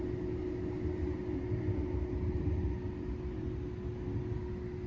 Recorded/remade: recorded